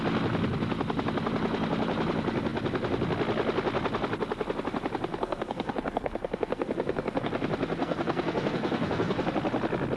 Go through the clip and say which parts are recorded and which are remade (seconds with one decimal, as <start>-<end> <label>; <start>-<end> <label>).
0.0-5.1 recorded; 5.1-7.3 remade; 7.3-7.8 recorded; 7.8-9.2 remade; 9.2-10.0 recorded

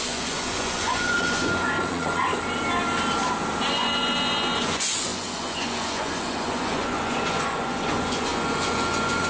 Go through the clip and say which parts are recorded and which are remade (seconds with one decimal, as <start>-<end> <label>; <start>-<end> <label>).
0.0-2.3 remade; 2.3-3.7 recorded; 3.7-9.3 remade

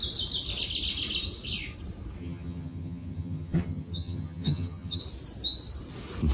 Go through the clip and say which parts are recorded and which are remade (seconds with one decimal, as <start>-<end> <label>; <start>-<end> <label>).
0.0-2.2 recorded; 2.2-5.0 remade; 5.0-6.3 recorded

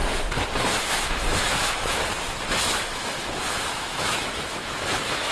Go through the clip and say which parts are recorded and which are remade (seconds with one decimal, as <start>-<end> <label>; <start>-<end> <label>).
0.0-0.8 recorded; 0.8-2.0 remade; 2.0-2.6 recorded; 2.6-5.3 remade

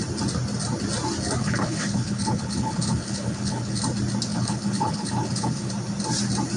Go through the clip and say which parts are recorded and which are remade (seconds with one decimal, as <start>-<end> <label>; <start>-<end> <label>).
0.0-1.4 recorded; 1.4-3.8 remade; 3.8-4.3 recorded; 4.3-5.7 remade; 5.7-6.6 recorded